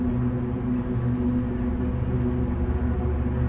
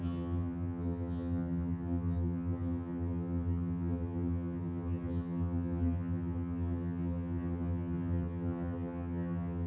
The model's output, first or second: second